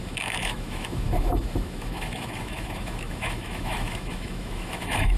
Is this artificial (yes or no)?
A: yes